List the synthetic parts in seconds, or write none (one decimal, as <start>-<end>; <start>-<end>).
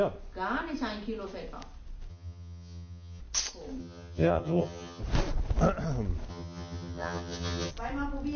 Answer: 2.1-3.2; 3.8-5.0; 6.3-7.7